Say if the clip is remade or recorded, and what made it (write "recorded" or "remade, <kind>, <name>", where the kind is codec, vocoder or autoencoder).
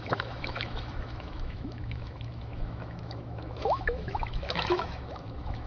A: remade, autoencoder, DAC-VAE